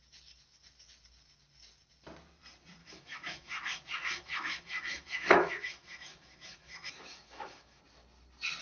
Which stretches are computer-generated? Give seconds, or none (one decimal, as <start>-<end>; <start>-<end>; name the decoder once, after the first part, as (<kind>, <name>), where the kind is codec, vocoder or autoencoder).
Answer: 2.8-7.8 (autoencoder, DAC-VAE)